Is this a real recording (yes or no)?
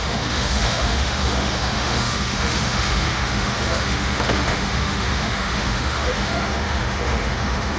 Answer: no